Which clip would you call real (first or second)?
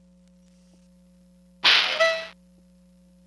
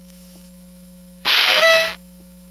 first